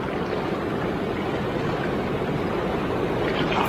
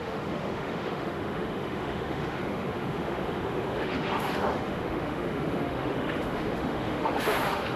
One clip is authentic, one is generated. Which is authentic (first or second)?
first